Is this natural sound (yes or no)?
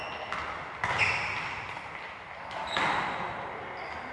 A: yes